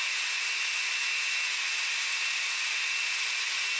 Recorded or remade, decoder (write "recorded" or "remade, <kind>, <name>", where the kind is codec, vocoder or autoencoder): recorded